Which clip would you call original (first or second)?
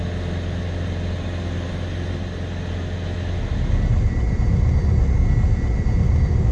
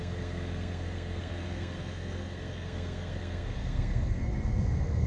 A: first